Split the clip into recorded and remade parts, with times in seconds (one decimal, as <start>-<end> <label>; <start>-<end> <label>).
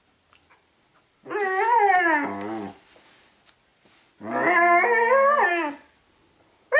0.0-6.8 recorded